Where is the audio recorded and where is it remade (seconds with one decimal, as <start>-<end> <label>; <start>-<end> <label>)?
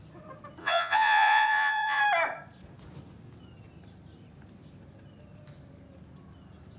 0.0-0.6 recorded; 0.6-2.0 remade; 2.0-6.8 recorded